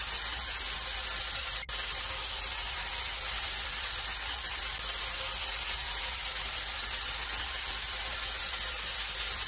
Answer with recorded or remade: recorded